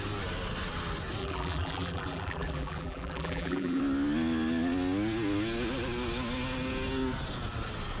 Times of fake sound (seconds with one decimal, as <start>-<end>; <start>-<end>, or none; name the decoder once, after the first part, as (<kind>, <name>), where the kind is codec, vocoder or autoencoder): 1.2-3.8 (vocoder, BigVGAN v2)